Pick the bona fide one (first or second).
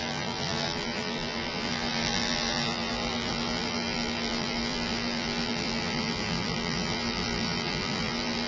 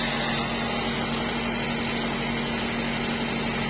second